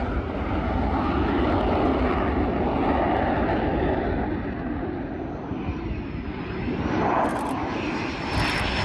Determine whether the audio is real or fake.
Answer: real